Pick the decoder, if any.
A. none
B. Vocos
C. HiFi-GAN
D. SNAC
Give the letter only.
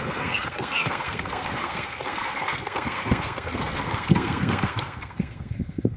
D